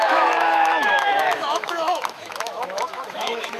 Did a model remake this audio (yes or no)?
yes